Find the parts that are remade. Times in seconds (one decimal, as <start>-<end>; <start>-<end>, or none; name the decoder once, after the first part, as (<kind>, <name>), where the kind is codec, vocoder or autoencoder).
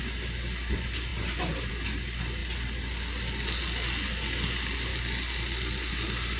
none